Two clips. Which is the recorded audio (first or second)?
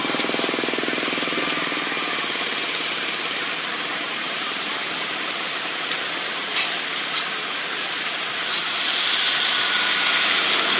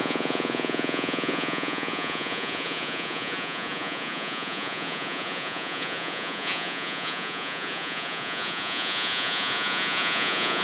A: first